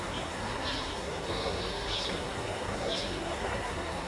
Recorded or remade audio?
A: remade